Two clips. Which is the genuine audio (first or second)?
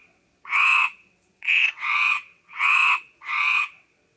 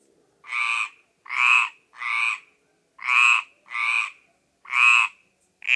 second